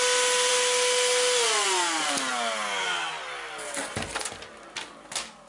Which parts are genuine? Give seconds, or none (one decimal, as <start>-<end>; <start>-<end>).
0.0-5.5

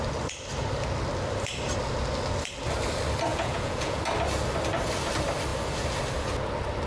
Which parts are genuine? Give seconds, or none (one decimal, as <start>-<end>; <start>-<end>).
0.0-3.3; 4.0-6.9

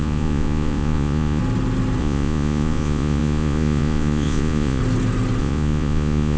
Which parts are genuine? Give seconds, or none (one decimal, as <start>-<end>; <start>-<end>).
1.4-2.0; 4.8-5.4

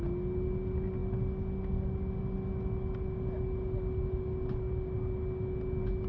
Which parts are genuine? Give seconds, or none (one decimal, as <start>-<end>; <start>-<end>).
0.0-6.1

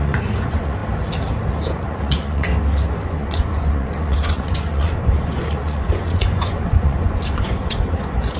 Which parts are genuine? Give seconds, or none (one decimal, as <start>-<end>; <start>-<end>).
0.8-1.5; 2.5-3.1